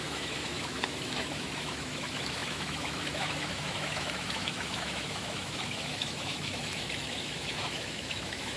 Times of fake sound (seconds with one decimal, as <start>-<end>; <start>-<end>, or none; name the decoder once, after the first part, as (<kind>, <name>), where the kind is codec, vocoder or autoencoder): 0.0-8.6 (autoencoder, DAC-VAE)